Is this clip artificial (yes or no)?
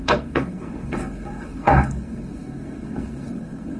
yes